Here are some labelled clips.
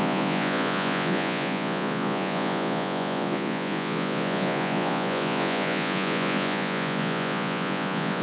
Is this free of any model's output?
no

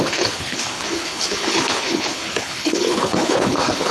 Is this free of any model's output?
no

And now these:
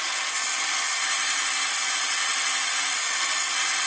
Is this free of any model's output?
yes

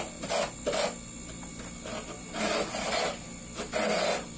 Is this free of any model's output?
yes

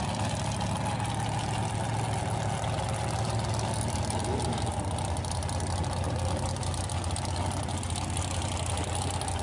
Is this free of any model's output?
yes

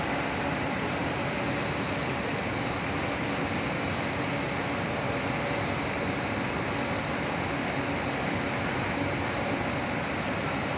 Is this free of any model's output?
yes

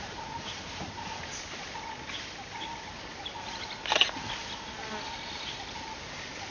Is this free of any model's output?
yes